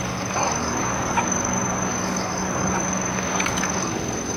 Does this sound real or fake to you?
fake